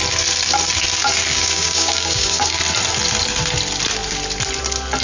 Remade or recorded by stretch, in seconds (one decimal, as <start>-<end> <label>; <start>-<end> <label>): 0.0-1.3 recorded; 1.3-2.6 remade; 2.6-5.0 recorded

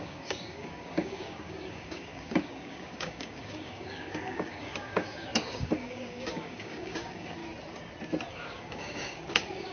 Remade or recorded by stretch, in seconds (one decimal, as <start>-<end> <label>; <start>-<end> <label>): 0.0-7.4 remade; 7.4-8.3 recorded; 8.3-9.7 remade

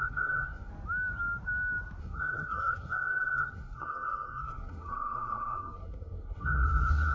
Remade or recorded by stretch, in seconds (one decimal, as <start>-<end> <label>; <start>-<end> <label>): 0.0-0.7 remade; 0.7-2.0 recorded; 2.0-7.1 remade

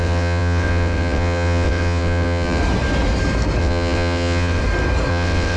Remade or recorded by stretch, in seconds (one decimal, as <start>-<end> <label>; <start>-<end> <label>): 0.0-2.6 remade; 2.6-3.6 recorded; 3.6-4.6 remade; 4.6-5.1 recorded; 5.1-5.6 remade

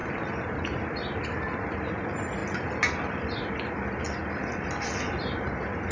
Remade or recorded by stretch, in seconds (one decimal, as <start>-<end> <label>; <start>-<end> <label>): 0.0-0.6 remade; 0.6-5.9 recorded

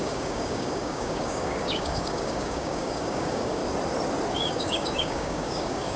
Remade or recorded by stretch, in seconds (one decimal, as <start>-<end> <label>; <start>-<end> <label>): 0.0-3.6 remade; 3.6-4.3 recorded; 4.3-6.0 remade

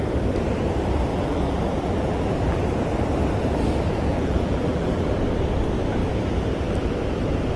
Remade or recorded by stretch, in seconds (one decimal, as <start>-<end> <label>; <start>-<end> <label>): 0.0-1.1 recorded; 1.1-2.6 remade; 2.6-4.1 recorded; 4.1-5.0 remade; 5.0-7.6 recorded

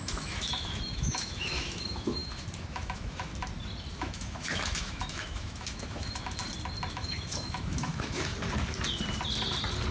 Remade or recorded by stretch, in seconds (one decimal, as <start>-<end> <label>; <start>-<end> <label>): 0.0-3.3 remade; 3.3-3.9 recorded; 3.9-6.4 remade; 6.4-6.9 recorded; 6.9-8.3 remade; 8.3-9.9 recorded